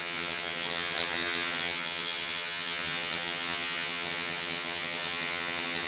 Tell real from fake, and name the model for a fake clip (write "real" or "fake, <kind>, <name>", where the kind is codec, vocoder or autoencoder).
fake, vocoder, HiFi-GAN